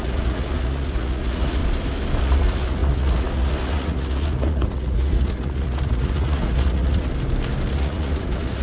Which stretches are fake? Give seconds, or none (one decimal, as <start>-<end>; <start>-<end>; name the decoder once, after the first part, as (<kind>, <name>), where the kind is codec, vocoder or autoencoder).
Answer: 0.0-1.6 (vocoder, Vocos); 2.2-7.1; 7.7-8.6